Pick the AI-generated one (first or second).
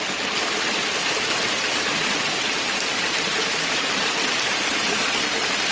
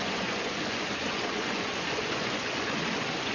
second